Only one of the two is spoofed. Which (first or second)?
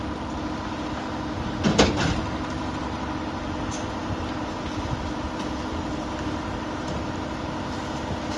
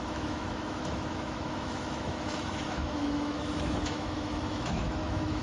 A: second